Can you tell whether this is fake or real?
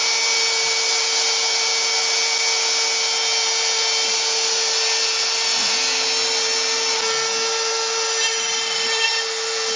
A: real